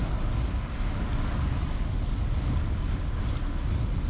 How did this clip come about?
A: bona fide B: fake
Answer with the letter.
A